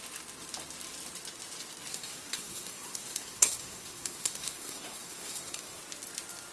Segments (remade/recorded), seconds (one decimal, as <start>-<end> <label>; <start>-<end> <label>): 0.0-1.9 recorded; 1.9-5.8 remade; 5.8-6.5 recorded